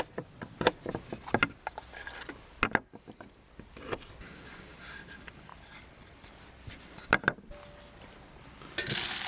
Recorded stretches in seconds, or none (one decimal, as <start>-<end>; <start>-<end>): 0.0-9.3